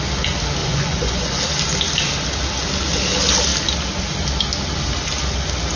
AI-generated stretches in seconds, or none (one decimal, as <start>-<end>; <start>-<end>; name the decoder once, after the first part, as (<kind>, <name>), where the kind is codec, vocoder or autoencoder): 0.6-1.4 (vocoder, Vocos)